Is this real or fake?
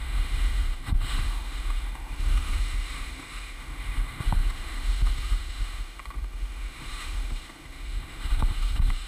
fake